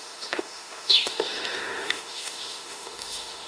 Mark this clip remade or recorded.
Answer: remade